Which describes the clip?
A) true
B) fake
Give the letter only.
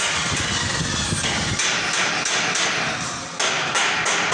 A